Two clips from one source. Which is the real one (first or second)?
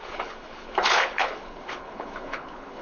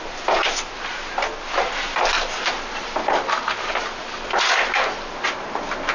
second